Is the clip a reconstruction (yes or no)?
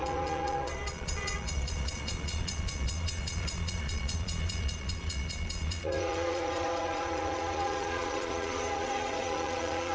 yes